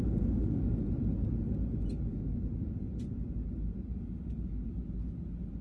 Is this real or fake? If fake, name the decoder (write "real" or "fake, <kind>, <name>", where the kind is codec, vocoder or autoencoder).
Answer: real